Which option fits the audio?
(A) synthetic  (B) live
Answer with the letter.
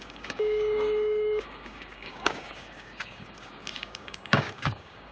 A